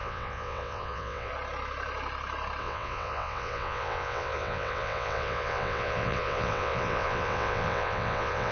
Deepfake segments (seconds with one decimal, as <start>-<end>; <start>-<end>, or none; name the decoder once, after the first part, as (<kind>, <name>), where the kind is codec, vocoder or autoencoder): 0.0-1.3 (vocoder, WaveNeXt); 2.6-8.5